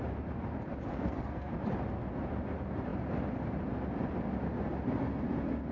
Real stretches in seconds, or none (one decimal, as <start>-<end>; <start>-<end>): 0.0-0.9; 1.5-5.7

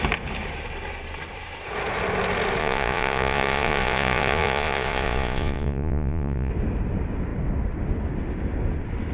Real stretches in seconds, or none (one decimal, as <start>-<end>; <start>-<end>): 0.0-2.6; 6.5-9.1

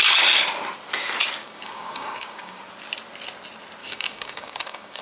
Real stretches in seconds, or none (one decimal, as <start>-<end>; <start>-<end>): 0.0-1.4; 2.6-3.8

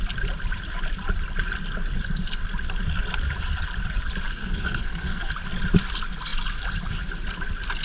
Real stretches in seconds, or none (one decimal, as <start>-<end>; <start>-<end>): 0.0-4.3; 5.3-7.8

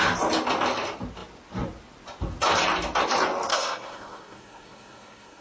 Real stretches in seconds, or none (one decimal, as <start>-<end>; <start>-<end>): 0.0-3.5